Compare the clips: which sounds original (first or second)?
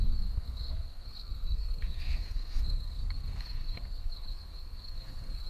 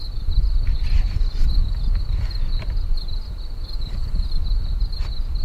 second